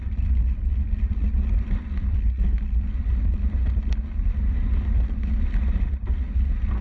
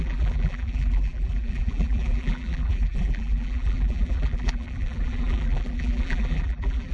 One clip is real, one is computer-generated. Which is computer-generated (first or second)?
second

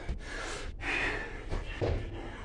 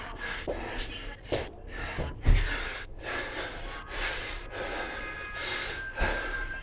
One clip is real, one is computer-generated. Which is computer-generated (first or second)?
second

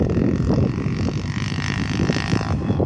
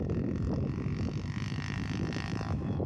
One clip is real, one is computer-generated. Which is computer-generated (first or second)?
first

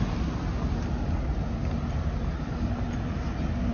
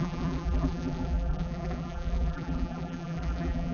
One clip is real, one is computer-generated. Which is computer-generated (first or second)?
second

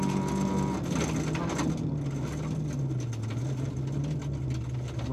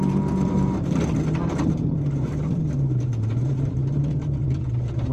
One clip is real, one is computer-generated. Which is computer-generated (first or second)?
second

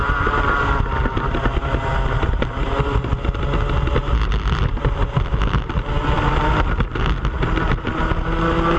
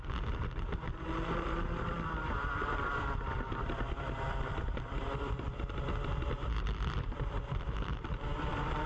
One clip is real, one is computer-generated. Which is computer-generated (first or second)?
second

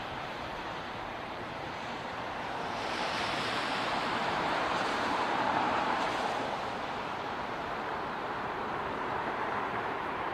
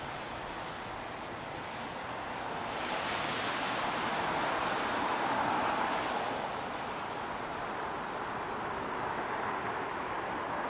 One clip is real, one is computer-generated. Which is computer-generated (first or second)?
first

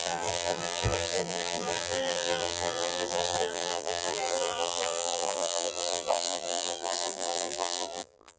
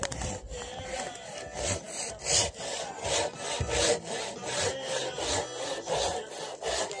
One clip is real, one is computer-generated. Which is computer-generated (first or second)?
first